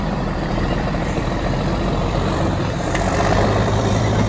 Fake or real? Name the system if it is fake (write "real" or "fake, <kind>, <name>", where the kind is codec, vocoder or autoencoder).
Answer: fake, vocoder, BigVGAN v2